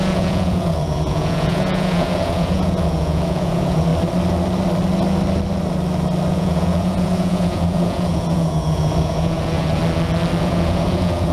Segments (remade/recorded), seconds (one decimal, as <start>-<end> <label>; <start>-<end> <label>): 0.0-3.9 remade; 3.9-6.3 recorded; 6.3-9.8 remade; 9.8-10.4 recorded; 10.4-11.3 remade